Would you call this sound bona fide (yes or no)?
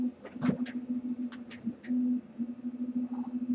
yes